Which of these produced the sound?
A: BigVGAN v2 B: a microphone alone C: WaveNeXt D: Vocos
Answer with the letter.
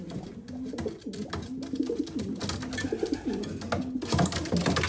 B